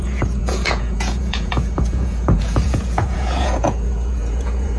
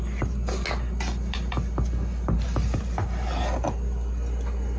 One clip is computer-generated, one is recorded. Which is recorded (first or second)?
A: second